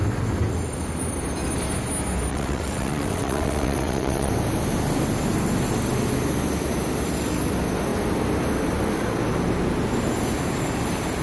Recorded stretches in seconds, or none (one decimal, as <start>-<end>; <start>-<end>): 0.0-2.3; 4.3-11.2